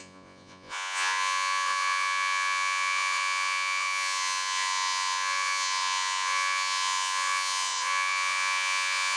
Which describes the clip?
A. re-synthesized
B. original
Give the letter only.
A